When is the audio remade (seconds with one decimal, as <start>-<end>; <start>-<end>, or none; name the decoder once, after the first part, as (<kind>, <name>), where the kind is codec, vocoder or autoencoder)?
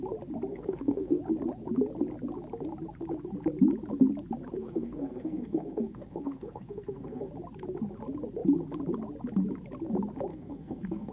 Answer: 0.5-1.2 (codec, SNAC); 4.6-7.3; 10.3-11.1